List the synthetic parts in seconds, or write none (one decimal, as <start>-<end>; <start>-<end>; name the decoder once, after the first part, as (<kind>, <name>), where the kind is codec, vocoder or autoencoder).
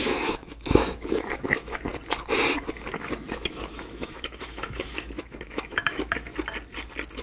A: 0.0-1.9 (autoencoder, DAC-VAE); 2.9-6.3